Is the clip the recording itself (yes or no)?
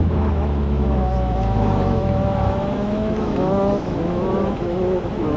no